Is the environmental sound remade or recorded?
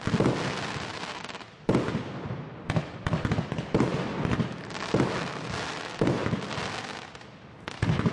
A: recorded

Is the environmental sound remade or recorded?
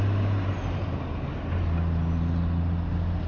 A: recorded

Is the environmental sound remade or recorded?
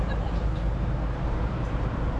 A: recorded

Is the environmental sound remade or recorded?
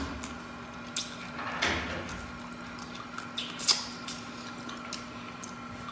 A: recorded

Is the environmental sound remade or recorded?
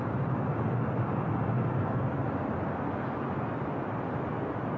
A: recorded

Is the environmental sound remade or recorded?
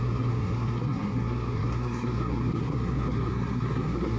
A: remade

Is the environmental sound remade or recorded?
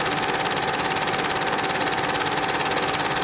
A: recorded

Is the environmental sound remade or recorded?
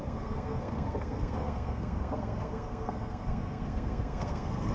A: remade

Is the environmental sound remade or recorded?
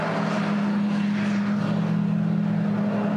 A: recorded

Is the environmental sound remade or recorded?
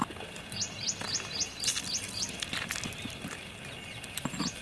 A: recorded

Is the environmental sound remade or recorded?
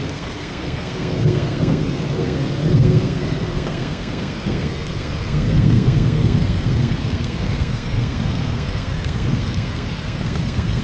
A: remade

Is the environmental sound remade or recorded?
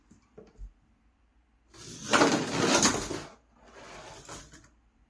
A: recorded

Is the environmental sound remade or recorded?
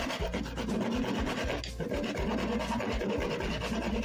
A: recorded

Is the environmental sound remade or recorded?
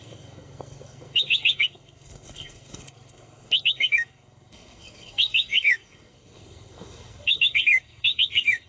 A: remade